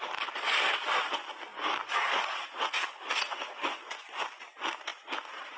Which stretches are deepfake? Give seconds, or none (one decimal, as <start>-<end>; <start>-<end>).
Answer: 3.6-4.2